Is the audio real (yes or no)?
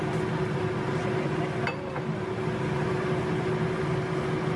yes